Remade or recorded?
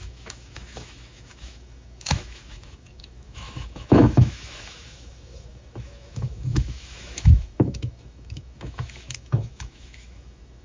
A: remade